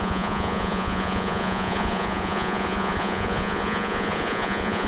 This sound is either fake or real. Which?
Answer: fake